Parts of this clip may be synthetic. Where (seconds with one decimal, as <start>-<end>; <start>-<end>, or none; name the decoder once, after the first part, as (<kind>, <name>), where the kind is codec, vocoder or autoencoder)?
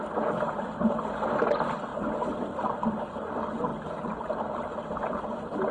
none